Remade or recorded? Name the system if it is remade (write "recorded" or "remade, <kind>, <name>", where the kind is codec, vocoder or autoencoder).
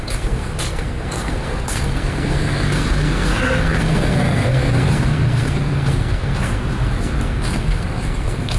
remade, codec, SNAC